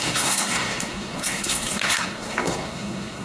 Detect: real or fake fake